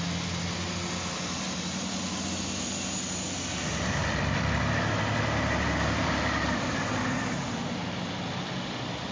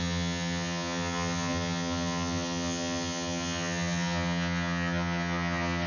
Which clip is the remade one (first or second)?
second